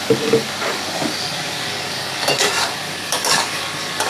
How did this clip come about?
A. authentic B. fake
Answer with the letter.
B